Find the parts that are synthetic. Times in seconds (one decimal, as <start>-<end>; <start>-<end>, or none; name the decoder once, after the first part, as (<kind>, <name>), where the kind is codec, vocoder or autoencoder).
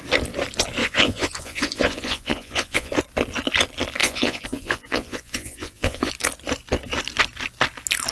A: 0.8-2.9 (vocoder, Vocos); 4.0-6.1